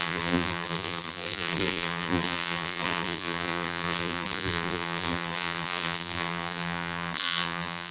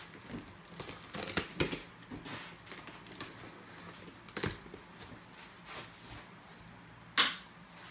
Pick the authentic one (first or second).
second